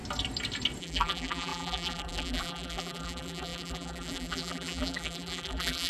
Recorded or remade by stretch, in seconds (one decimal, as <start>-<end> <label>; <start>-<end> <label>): 0.0-0.8 recorded; 0.8-5.9 remade